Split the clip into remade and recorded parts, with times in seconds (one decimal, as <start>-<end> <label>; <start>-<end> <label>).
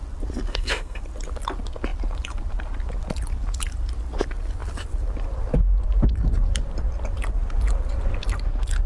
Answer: 0.0-0.5 recorded; 0.5-1.0 remade; 1.0-8.9 recorded